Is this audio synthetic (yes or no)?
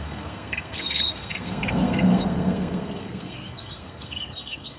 yes